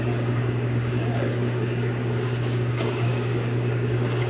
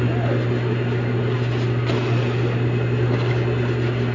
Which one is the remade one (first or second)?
first